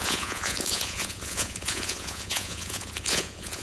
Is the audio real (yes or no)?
no